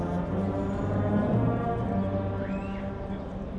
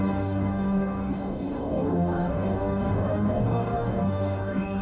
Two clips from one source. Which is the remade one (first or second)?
second